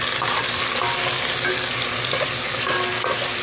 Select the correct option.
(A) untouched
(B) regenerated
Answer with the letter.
A